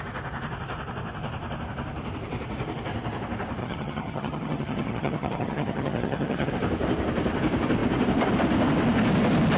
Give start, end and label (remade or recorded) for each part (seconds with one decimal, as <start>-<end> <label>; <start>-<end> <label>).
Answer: 0.0-3.6 recorded; 3.6-6.5 remade; 6.5-9.6 recorded